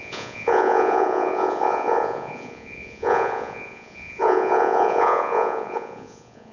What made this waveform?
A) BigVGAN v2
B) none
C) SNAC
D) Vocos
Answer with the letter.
D